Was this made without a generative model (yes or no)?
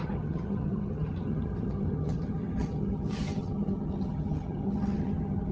no